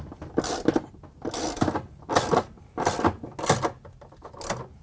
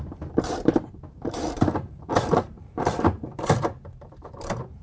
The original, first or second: first